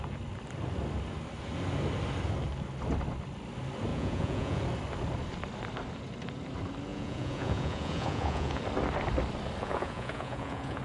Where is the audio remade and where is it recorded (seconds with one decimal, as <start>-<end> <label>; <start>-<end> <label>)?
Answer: 0.0-3.9 recorded; 3.9-4.6 remade; 4.6-6.9 recorded; 6.9-8.6 remade; 8.6-9.6 recorded; 9.6-10.8 remade